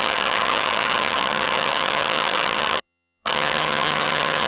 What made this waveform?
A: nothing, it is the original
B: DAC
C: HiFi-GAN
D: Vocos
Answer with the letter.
C